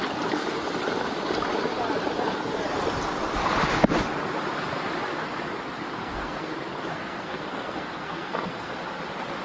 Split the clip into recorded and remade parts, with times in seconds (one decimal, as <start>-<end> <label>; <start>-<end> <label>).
0.0-6.0 recorded; 6.0-6.5 remade; 6.5-6.9 recorded; 6.9-8.8 remade; 8.8-9.4 recorded